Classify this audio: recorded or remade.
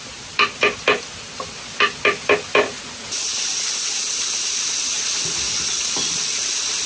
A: recorded